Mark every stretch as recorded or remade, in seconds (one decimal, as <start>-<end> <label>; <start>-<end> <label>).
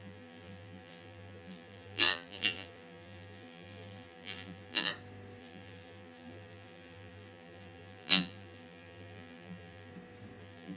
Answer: 0.0-4.9 remade; 4.9-5.4 recorded; 5.4-9.9 remade; 9.9-10.4 recorded; 10.4-10.8 remade